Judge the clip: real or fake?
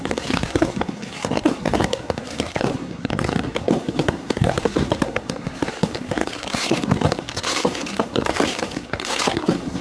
fake